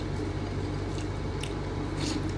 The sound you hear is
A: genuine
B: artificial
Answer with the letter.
A